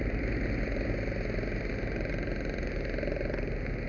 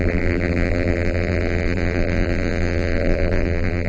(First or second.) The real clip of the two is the first